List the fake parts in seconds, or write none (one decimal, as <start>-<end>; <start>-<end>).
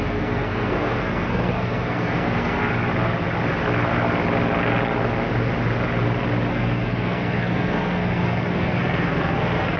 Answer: 0.0-2.7; 6.5-9.8